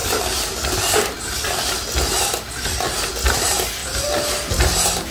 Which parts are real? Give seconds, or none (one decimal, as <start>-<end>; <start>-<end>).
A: 0.0-5.1